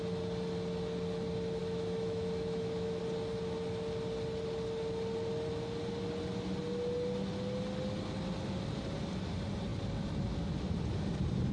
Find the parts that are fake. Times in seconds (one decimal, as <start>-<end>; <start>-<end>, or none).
1.6-3.0